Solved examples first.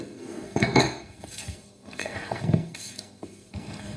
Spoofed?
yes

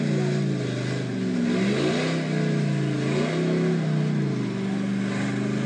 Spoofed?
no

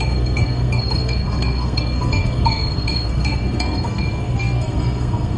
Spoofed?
yes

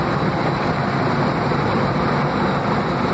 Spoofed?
no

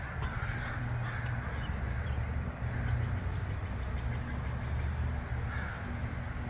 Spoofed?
no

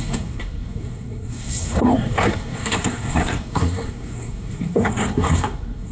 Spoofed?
yes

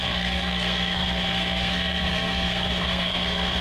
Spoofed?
yes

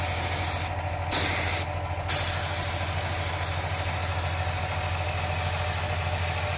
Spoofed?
no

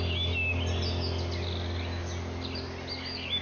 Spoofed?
no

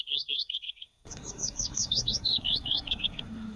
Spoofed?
yes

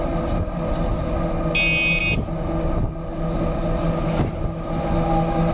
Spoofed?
no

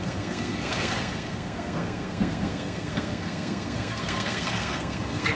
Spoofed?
yes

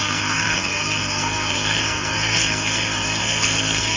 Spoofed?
yes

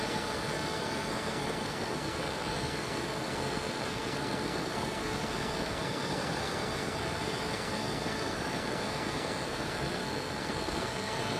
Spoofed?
yes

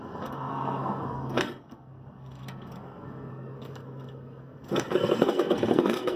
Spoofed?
yes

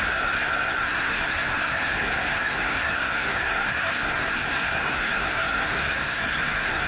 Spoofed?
yes